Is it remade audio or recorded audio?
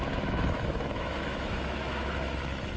remade